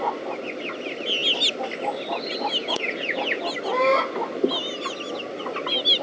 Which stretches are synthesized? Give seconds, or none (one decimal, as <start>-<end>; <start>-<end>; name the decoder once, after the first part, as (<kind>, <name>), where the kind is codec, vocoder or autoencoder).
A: 2.6-3.4 (vocoder, Vocos)